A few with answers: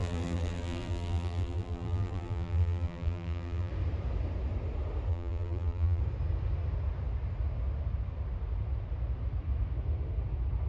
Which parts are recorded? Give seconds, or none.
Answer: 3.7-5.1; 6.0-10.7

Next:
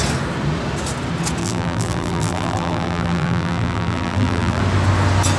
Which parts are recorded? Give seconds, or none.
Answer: 0.0-1.4; 4.6-5.4